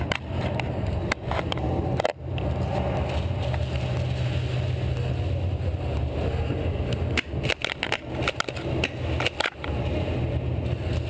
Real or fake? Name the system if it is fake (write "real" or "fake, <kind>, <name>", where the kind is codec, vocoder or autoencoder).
real